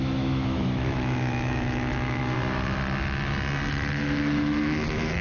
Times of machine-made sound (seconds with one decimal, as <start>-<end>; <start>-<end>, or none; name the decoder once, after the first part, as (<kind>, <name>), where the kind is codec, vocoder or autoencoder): 0.0-2.2 (autoencoder, DAC-VAE); 3.7-5.2